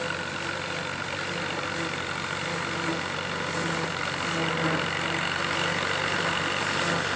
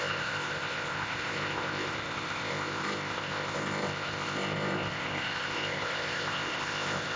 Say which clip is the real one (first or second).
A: first